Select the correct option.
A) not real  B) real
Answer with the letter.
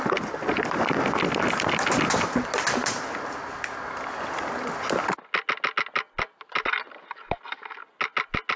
B